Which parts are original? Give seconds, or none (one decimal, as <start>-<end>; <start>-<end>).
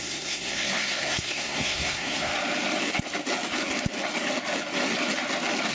2.3-5.7